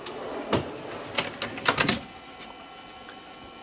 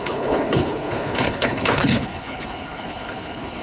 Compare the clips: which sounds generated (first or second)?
second